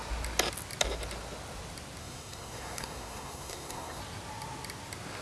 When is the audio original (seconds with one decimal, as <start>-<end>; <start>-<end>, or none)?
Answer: 0.0-2.0; 4.0-5.2